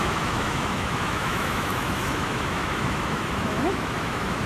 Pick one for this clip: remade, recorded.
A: remade